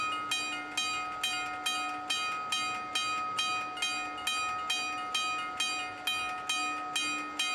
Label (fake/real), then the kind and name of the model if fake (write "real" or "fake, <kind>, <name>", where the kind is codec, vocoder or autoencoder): real